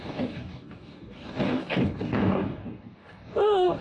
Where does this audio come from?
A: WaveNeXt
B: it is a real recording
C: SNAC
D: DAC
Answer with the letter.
D